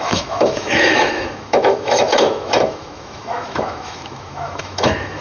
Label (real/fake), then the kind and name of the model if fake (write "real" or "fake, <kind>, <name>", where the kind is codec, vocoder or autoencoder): fake, autoencoder, DAC-VAE